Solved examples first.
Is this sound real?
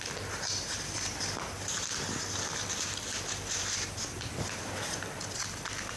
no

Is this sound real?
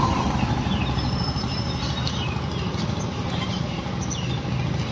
yes